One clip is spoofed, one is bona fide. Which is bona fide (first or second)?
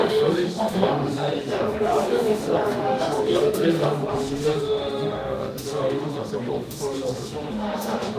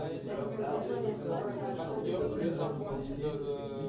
second